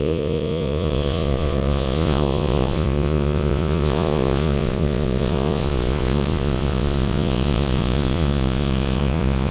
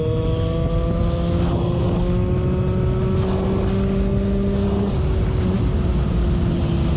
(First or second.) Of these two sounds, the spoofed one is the first